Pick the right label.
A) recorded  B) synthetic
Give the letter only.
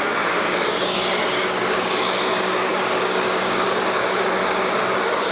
B